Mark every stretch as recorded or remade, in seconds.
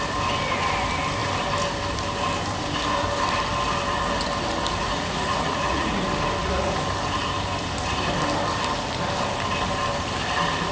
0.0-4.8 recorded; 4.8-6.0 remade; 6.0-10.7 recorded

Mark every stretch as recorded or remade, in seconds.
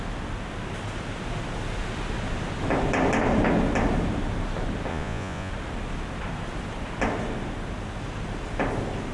0.0-4.9 recorded; 4.9-5.5 remade; 5.5-9.1 recorded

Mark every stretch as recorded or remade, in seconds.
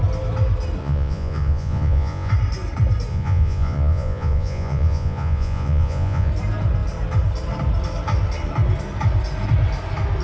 0.0-0.8 recorded; 0.8-2.3 remade; 2.3-3.1 recorded; 3.1-6.3 remade; 6.3-10.2 recorded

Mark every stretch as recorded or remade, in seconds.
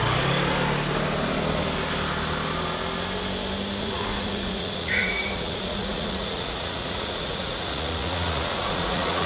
0.0-3.8 recorded; 3.8-9.3 remade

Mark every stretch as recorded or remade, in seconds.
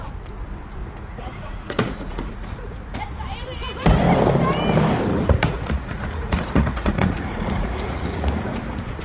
0.0-0.8 recorded; 0.8-3.0 remade; 3.0-5.1 recorded; 5.1-9.0 remade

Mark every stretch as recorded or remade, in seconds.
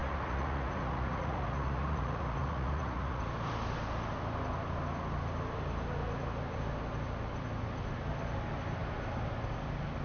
0.0-3.2 remade; 3.2-10.0 recorded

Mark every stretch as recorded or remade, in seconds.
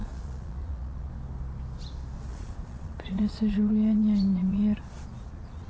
0.0-1.1 remade; 1.1-2.3 recorded; 2.3-5.7 remade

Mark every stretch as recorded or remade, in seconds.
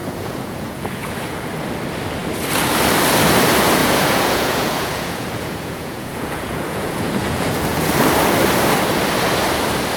0.0-1.5 remade; 1.5-3.8 recorded; 3.8-7.9 remade; 7.9-10.0 recorded